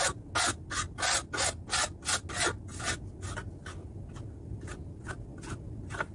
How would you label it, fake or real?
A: real